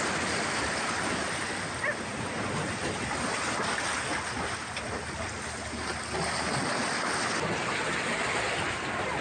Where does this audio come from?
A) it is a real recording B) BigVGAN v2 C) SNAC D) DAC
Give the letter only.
A